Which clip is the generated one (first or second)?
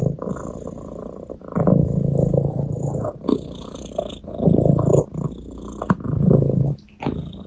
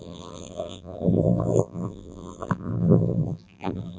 second